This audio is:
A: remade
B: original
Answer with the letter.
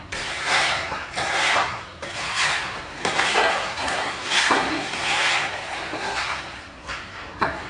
A